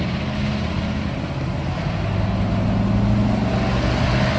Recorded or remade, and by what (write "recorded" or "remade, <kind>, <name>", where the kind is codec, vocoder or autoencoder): recorded